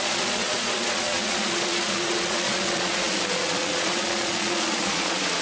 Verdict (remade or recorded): remade